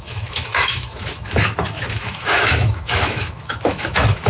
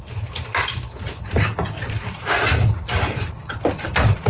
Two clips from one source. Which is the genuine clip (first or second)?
second